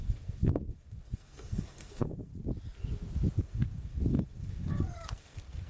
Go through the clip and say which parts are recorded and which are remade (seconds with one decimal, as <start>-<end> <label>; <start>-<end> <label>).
0.0-2.3 remade; 2.3-3.4 recorded; 3.4-5.7 remade